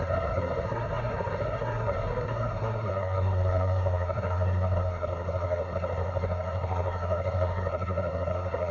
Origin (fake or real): fake